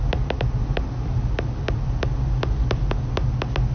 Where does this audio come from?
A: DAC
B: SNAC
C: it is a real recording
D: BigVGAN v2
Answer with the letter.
C